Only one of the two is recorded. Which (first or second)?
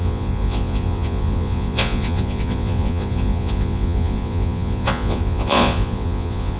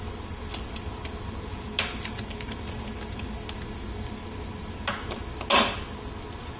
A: second